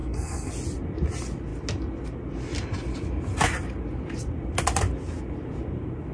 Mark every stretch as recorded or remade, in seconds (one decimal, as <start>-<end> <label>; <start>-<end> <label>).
0.0-0.5 remade; 0.5-6.1 recorded